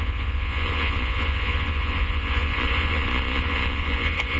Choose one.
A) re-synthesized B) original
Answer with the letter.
A